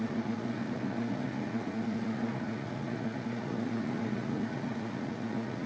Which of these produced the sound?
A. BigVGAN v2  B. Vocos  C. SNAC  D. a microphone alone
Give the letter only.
B